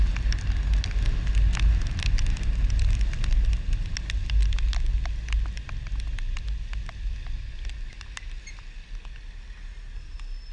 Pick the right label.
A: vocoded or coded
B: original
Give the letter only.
B